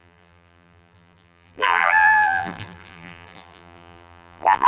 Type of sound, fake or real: fake